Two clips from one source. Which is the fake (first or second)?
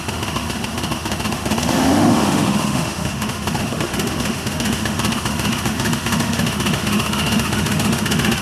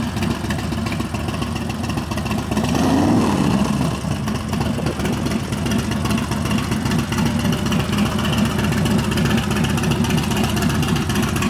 first